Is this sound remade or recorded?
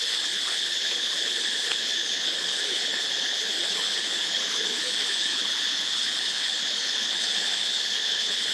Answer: remade